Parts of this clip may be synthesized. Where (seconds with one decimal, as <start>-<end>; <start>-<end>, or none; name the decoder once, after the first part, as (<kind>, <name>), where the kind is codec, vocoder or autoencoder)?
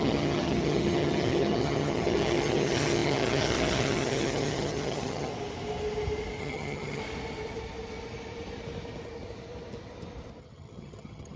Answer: 0.0-5.3 (vocoder, HiFi-GAN); 6.4-7.0; 10.4-11.4